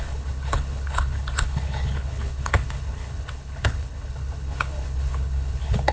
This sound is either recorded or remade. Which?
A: remade